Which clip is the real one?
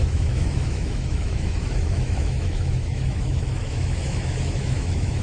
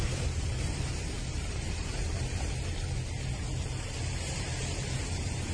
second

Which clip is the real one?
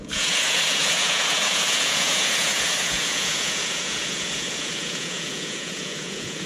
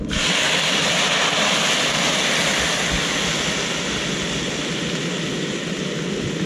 second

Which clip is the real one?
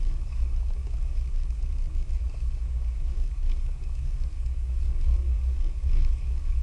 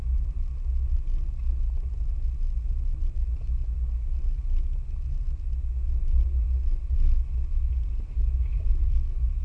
second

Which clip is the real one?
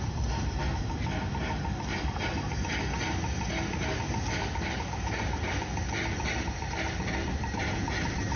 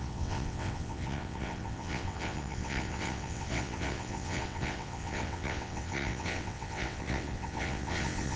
first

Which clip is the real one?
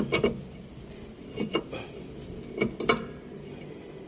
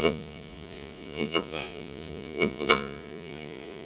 first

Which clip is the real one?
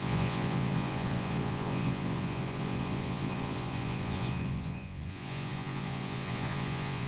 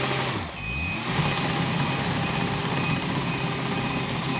second